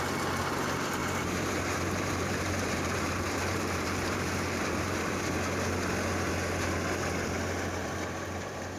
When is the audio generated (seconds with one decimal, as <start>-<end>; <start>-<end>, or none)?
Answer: 1.0-5.2; 7.8-8.8